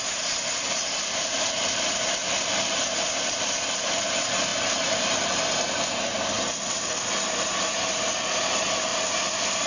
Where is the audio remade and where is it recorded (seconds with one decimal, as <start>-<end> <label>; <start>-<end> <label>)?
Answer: 0.0-9.7 recorded